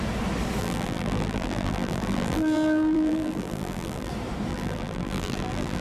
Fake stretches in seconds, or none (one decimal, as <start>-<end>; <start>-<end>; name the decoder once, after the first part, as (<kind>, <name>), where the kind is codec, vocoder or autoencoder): 0.6-4.1 (vocoder, BigVGAN v2); 4.5-5.8